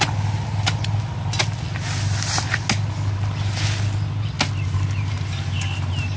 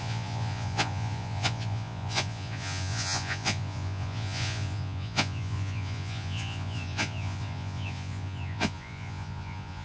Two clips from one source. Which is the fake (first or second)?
second